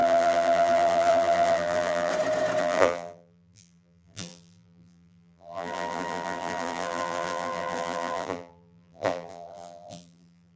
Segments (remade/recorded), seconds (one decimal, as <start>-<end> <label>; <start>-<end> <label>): 0.0-2.1 remade; 2.1-2.6 recorded; 2.6-10.6 remade